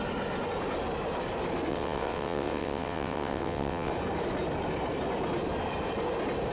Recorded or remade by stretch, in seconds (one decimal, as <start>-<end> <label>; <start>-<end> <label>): 0.0-1.7 recorded; 1.7-3.9 remade; 3.9-6.5 recorded